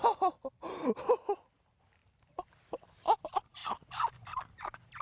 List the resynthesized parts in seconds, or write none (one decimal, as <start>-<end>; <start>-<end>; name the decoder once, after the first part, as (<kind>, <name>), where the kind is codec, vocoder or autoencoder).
none